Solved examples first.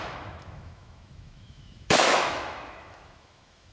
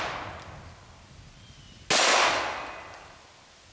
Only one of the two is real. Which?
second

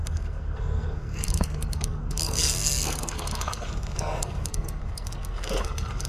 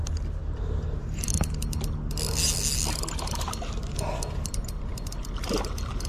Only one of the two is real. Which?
second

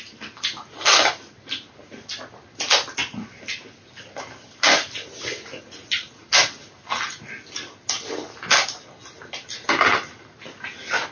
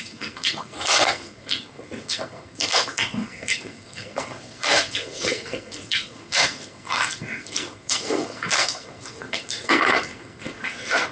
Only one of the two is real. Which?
first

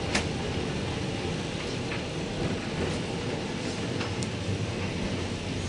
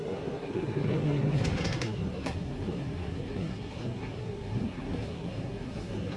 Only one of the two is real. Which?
first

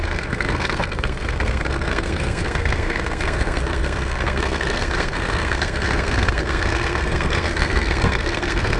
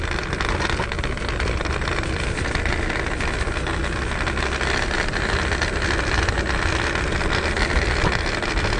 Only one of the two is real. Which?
second